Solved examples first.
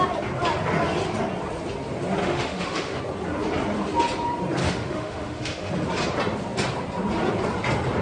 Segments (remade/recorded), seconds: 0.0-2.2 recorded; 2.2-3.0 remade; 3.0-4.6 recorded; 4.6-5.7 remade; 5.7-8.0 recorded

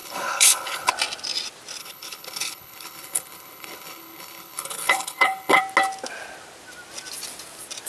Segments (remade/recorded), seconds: 0.0-0.9 remade; 0.9-1.8 recorded; 1.8-5.6 remade; 5.6-7.9 recorded